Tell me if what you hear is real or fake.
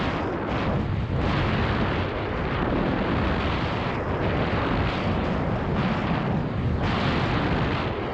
real